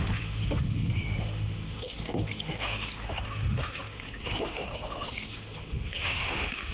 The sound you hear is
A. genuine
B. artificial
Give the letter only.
B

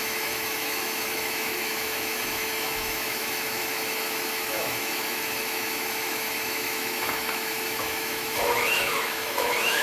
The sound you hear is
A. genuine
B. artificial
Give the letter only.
B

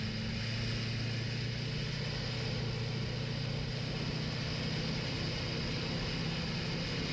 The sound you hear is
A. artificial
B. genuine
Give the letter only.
B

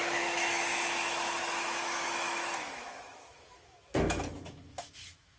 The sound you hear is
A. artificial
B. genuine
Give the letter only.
A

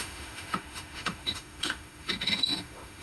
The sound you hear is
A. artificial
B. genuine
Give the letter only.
A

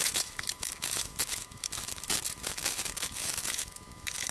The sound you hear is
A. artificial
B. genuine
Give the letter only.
A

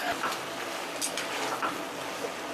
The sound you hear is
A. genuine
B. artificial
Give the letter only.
A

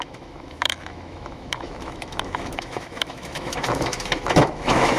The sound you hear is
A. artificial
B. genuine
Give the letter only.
A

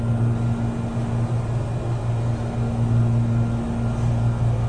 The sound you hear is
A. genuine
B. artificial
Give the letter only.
A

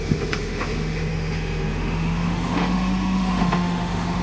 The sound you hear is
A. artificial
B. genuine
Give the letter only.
A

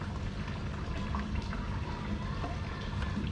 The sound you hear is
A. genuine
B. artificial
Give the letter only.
A